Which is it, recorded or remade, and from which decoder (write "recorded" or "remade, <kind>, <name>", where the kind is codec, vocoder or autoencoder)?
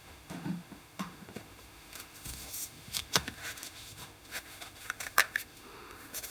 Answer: remade, autoencoder, DAC-VAE